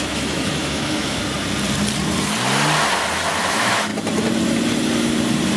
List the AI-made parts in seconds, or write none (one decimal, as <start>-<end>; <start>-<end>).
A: 0.0-1.2; 3.4-3.9